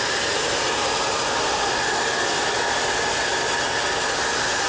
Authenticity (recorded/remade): recorded